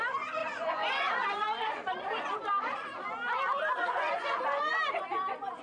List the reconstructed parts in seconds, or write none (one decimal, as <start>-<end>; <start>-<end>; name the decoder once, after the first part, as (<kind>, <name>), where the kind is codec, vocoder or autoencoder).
0.4-2.1 (vocoder, Vocos); 3.7-4.7

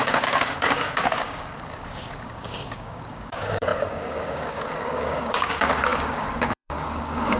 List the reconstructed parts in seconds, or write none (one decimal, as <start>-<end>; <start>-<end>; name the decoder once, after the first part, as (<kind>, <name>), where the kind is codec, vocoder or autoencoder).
0.0-7.4 (codec, DAC)

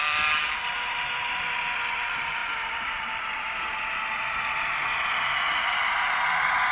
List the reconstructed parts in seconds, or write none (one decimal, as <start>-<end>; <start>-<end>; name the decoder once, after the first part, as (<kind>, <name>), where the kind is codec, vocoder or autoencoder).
0.0-6.7 (vocoder, BigVGAN v2)

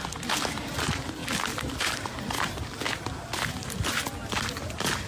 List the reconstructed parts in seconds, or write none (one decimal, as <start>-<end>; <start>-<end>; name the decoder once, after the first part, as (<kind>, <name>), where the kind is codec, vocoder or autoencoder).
none

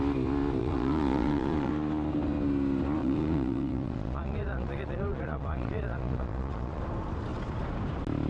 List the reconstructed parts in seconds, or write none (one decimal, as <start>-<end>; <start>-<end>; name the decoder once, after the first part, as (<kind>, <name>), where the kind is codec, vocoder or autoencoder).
0.6-1.7 (vocoder, Vocos); 3.0-6.8

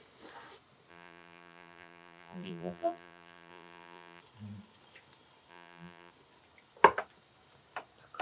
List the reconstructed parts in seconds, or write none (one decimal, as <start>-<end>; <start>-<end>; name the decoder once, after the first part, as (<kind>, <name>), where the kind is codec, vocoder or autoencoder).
0.9-4.2 (vocoder, BigVGAN v2); 5.5-6.1